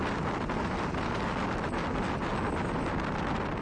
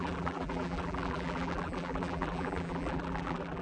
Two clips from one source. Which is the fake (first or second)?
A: second